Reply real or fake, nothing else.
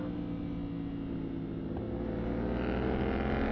real